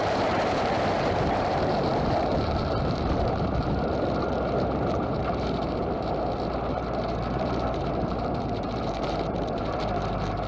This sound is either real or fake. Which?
fake